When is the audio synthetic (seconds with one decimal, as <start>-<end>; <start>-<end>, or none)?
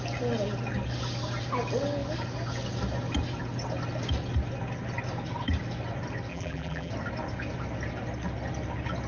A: 6.3-6.9